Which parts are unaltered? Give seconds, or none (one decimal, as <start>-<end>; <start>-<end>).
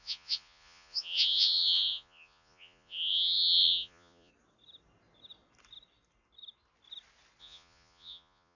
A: 4.3-7.4